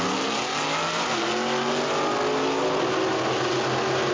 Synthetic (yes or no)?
no